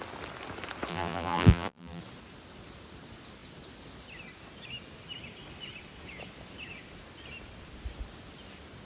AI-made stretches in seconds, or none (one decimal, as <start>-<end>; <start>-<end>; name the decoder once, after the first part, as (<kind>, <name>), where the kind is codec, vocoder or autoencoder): 0.9-2.0 (vocoder, BigVGAN v2)